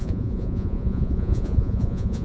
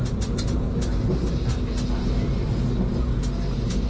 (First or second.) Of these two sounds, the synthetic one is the first